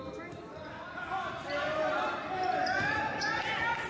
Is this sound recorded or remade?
recorded